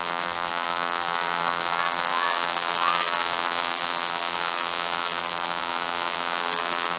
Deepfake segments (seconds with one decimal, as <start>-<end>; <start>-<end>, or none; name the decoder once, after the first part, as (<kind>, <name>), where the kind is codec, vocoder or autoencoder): 0.0-7.0 (vocoder, BigVGAN v2)